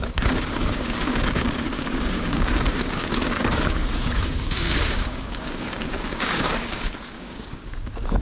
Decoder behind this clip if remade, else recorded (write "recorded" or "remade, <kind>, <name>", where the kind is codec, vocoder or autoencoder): remade, codec, DAC